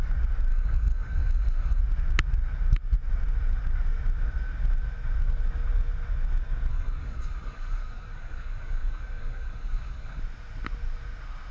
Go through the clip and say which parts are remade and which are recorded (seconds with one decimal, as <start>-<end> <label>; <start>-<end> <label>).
0.0-0.5 recorded; 0.5-1.8 remade; 1.8-6.7 recorded; 6.7-10.2 remade; 10.2-11.5 recorded